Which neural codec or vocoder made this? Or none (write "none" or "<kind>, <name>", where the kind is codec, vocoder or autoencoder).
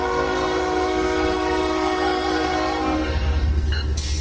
codec, SNAC